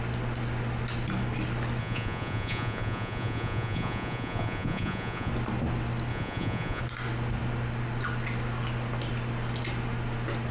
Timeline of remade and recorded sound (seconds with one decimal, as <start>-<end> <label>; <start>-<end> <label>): 0.0-1.8 recorded; 1.8-5.3 remade; 5.3-6.1 recorded; 6.1-6.8 remade; 6.8-10.5 recorded